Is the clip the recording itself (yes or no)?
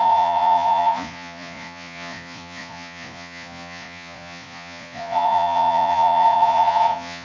no